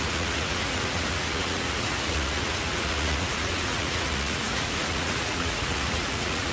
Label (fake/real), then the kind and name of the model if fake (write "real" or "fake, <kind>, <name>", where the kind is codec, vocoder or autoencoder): fake, vocoder, Vocos